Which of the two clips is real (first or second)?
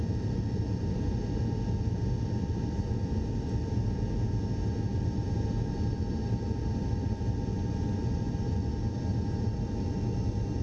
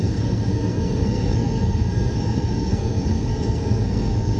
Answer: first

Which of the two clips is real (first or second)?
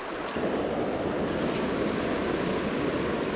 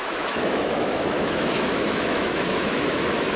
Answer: first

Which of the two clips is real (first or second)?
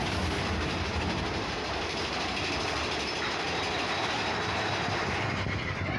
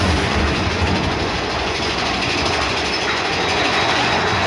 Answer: first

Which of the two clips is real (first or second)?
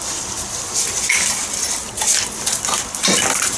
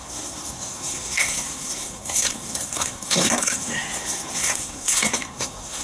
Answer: first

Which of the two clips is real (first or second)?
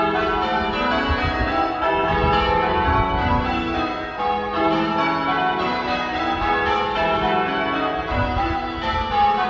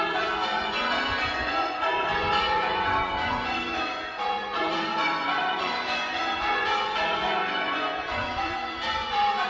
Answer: first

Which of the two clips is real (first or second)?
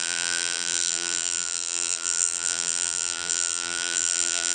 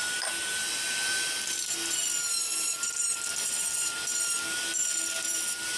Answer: second